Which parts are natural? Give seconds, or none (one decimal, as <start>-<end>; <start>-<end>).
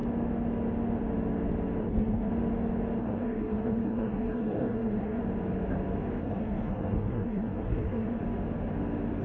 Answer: 0.0-1.8; 2.3-3.0; 5.2-6.2; 8.2-9.2